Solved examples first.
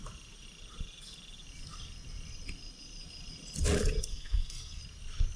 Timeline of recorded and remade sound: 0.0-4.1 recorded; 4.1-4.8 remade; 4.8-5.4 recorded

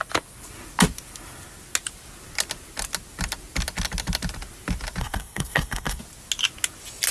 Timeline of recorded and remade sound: 0.0-5.0 recorded; 5.0-6.0 remade; 6.0-7.1 recorded

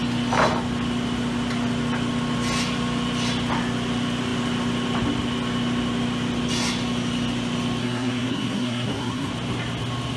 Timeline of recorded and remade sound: 0.0-7.8 recorded; 7.8-9.3 remade; 9.3-10.2 recorded

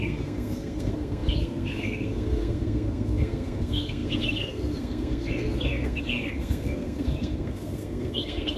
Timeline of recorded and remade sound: 0.0-8.6 remade

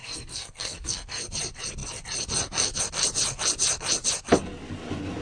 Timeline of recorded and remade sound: 0.0-1.2 remade; 1.2-5.2 recorded

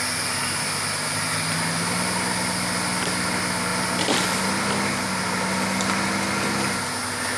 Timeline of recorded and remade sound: 0.0-7.4 recorded